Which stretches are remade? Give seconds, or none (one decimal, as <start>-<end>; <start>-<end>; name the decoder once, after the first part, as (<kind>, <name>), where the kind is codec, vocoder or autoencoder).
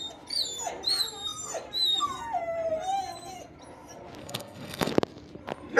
4.2-4.9 (codec, SNAC)